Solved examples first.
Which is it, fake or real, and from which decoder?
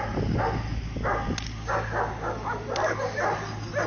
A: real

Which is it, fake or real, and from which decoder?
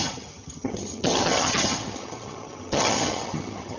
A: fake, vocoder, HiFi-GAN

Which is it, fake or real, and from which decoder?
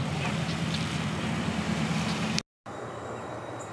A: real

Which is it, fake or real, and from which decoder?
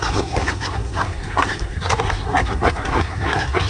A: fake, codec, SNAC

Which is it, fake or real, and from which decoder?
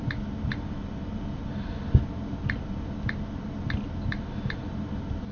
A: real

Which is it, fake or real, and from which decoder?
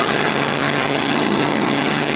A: fake, vocoder, HiFi-GAN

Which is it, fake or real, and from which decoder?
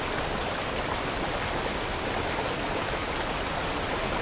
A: real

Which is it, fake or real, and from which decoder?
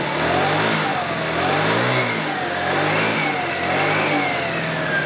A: real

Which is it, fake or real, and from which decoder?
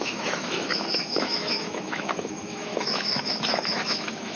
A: fake, autoencoder, DAC-VAE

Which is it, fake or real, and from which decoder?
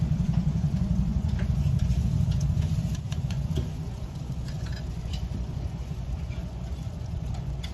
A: fake, vocoder, Vocos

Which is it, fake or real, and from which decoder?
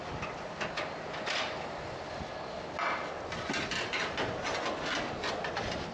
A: real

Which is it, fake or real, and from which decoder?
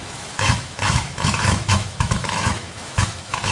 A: fake, autoencoder, DAC-VAE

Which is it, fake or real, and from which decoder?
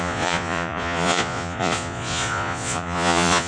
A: fake, vocoder, Vocos